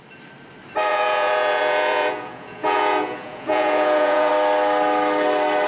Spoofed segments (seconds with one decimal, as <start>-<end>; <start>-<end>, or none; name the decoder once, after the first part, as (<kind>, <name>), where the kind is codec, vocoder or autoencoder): 0.9-4.3 (vocoder, Vocos)